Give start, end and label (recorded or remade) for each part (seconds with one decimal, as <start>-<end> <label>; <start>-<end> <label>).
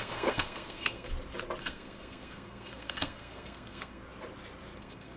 0.0-1.1 remade; 1.1-1.6 recorded; 1.6-4.0 remade; 4.0-4.8 recorded; 4.8-5.2 remade